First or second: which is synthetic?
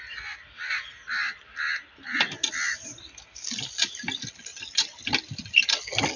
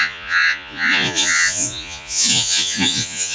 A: second